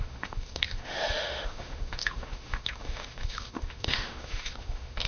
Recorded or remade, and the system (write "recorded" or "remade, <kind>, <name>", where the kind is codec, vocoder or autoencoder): remade, autoencoder, DAC-VAE